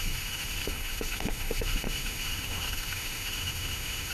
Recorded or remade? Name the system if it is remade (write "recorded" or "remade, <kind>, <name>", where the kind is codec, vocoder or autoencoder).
remade, autoencoder, DAC-VAE